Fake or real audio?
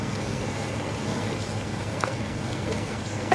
fake